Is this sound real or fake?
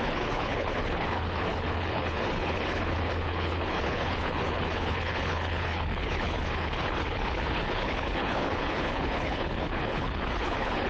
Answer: fake